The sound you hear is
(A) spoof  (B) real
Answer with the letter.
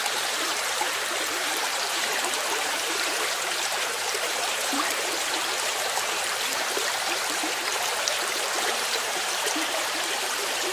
A